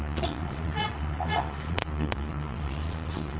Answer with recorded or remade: remade